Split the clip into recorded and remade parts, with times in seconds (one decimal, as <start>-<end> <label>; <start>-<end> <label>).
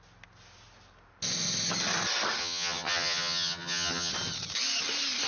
0.0-2.4 recorded; 2.4-4.1 remade; 4.1-5.3 recorded